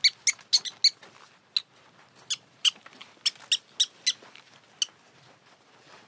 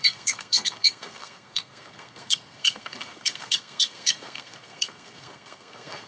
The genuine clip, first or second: first